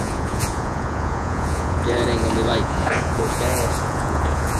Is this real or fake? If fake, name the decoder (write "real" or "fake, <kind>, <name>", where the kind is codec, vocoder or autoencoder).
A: fake, vocoder, Vocos